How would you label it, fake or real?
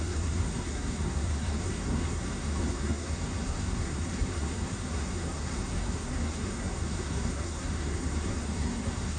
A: fake